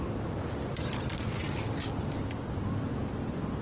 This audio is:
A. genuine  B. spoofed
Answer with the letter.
A